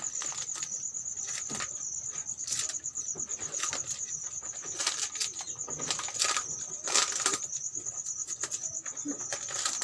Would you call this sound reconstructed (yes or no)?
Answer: no